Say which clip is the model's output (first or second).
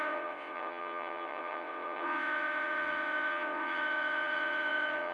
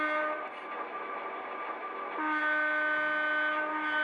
first